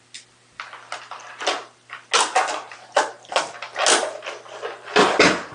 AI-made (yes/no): no